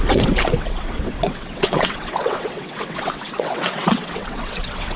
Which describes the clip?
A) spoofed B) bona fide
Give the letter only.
A